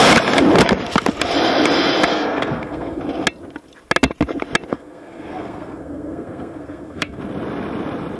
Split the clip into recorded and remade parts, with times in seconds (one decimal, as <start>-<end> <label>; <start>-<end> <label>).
0.0-2.1 recorded; 2.1-3.0 remade; 3.0-4.7 recorded; 4.7-7.2 remade; 7.2-8.2 recorded